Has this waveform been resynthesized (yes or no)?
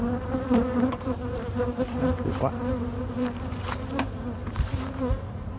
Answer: yes